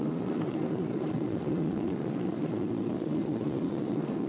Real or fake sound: fake